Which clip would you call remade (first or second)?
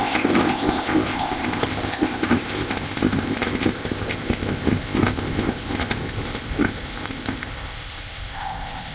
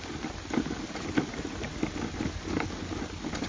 first